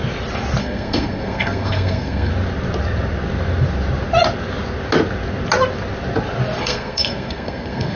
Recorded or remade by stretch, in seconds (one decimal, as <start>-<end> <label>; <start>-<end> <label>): 0.0-0.6 recorded; 0.6-2.3 remade; 2.3-6.6 recorded; 6.6-8.0 remade

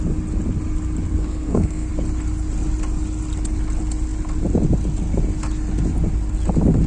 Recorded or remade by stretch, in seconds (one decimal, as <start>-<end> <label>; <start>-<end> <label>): 0.0-1.1 recorded; 1.1-1.9 remade; 1.9-6.9 recorded

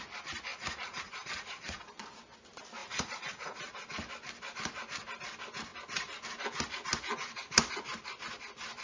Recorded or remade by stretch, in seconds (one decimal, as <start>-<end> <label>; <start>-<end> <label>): 0.0-0.5 recorded; 0.5-1.8 remade; 1.8-2.8 recorded; 2.8-3.7 remade; 3.7-8.8 recorded

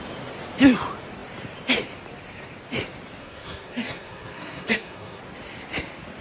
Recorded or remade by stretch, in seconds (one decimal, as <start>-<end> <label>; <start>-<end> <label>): 0.0-3.2 recorded; 3.2-5.2 remade; 5.2-6.2 recorded

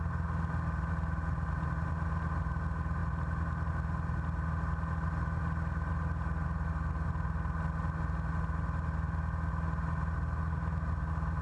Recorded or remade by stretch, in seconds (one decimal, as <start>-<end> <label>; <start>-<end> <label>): 0.0-11.4 recorded